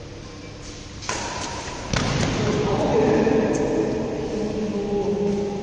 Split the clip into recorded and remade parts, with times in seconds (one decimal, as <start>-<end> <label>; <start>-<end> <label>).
0.0-2.9 recorded; 2.9-3.5 remade; 3.5-5.6 recorded